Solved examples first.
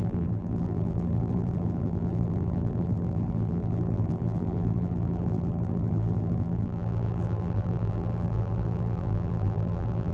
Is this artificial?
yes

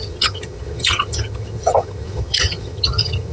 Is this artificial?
yes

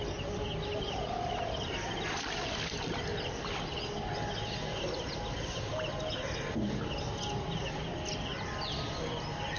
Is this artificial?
no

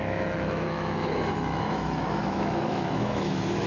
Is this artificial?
yes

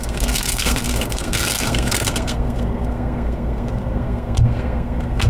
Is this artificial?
yes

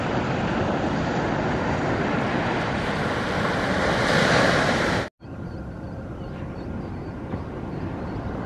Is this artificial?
no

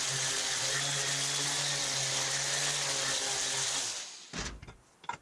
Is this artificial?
no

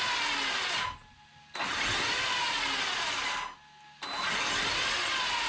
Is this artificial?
no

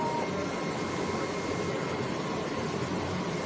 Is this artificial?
no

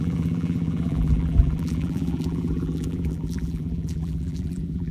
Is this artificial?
yes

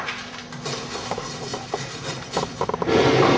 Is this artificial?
no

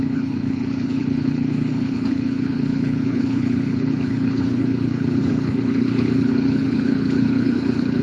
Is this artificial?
yes